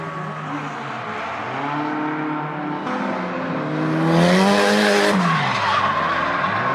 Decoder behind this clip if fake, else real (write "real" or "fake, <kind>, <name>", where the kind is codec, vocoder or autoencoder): real